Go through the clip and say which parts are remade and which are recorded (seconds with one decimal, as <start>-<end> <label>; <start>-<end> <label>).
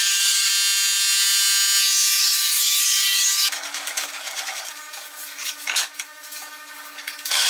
0.0-0.5 remade; 0.5-2.2 recorded; 2.2-7.5 remade